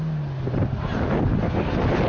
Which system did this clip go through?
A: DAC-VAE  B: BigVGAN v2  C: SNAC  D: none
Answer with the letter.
D